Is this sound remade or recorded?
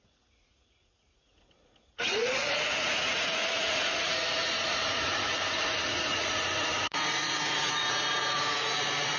remade